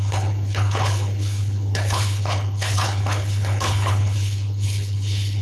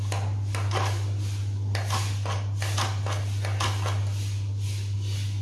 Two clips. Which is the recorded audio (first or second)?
second